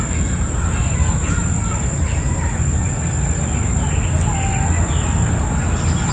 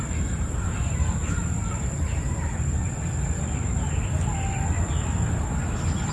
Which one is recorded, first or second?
first